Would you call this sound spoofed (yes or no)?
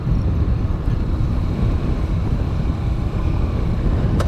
yes